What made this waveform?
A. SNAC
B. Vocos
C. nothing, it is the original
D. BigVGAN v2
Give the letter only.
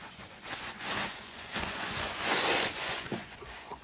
B